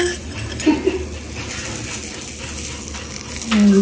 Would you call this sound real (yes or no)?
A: yes